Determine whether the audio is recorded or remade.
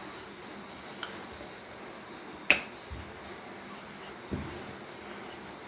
recorded